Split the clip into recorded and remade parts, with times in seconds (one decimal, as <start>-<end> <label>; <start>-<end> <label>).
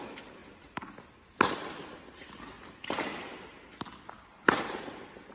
0.0-5.3 recorded